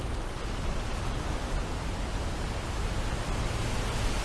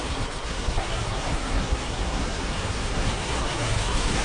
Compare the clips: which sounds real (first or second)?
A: first